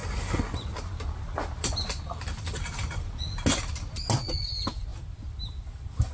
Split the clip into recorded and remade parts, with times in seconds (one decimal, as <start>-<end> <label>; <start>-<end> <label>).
0.0-6.1 recorded